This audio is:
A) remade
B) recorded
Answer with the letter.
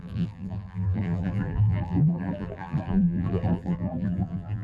A